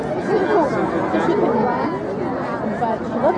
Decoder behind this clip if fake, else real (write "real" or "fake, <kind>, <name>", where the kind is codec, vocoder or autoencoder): real